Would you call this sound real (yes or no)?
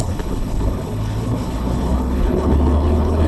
no